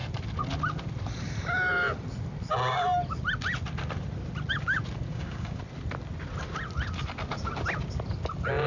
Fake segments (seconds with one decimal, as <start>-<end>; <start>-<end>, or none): 5.1-5.6